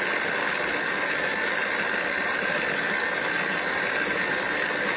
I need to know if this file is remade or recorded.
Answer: recorded